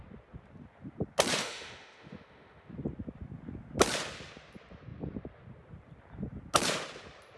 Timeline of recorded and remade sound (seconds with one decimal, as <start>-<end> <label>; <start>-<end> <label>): 0.0-1.4 recorded; 1.4-2.7 remade; 2.7-7.4 recorded